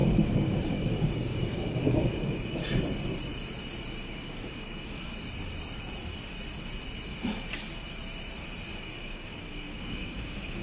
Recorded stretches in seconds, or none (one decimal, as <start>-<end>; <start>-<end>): 2.6-4.0; 5.1-8.8